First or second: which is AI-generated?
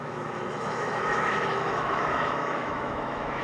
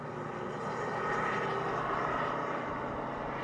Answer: first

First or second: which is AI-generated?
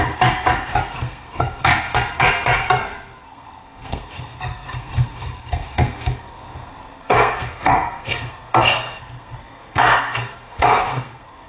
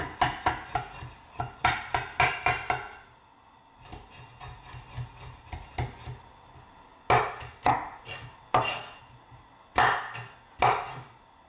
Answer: first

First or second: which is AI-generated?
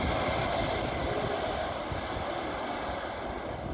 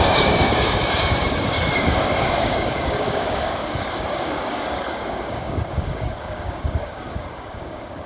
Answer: second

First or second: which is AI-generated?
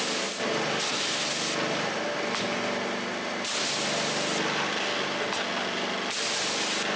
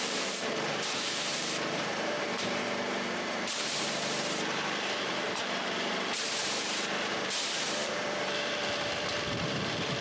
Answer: second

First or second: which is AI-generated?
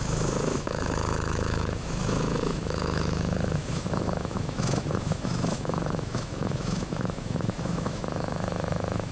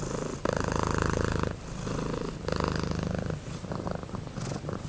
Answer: first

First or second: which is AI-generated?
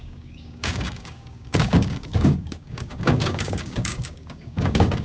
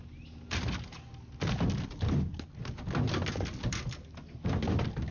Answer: first